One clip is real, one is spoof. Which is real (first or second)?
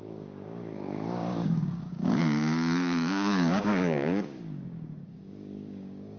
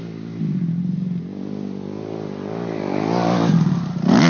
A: second